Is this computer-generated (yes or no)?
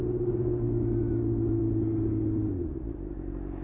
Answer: no